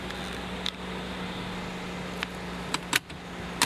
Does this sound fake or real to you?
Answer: real